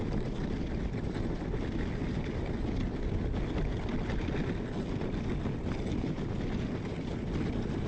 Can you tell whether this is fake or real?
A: real